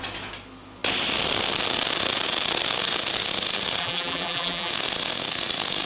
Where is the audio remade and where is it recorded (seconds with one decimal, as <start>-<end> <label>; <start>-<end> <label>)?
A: 0.0-3.8 recorded; 3.8-4.7 remade; 4.7-5.9 recorded